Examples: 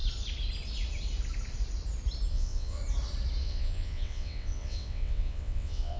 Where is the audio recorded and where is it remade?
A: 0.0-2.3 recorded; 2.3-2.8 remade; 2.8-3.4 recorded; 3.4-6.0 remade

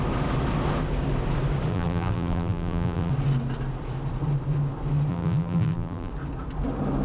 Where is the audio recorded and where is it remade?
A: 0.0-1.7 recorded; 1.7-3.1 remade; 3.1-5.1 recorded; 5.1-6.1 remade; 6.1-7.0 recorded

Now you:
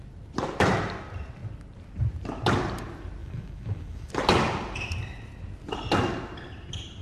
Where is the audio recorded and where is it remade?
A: 0.0-3.2 recorded; 3.2-4.1 remade; 4.1-7.0 recorded

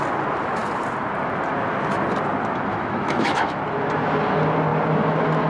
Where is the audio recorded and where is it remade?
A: 0.0-2.7 recorded; 2.7-3.6 remade; 3.6-5.5 recorded

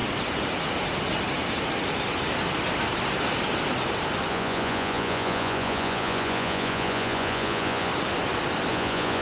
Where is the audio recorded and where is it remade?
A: 0.0-4.3 recorded; 4.3-7.9 remade; 7.9-8.7 recorded; 8.7-9.2 remade